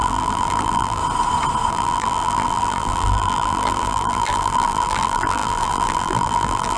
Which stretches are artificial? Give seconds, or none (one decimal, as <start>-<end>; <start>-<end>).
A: 0.0-1.0; 1.7-6.8